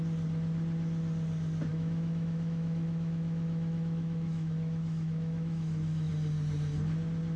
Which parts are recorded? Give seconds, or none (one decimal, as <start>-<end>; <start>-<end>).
0.0-1.7; 6.1-7.4